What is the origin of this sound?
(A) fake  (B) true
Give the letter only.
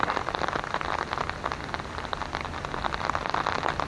B